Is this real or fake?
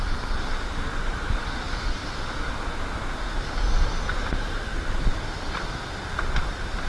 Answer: real